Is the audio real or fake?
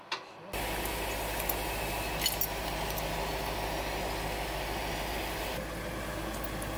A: real